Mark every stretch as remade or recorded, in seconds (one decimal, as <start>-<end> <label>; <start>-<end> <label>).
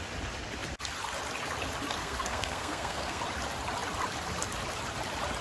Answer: 0.0-2.0 recorded; 2.0-3.2 remade; 3.2-5.4 recorded